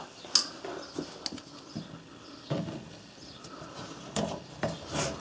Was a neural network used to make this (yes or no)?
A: no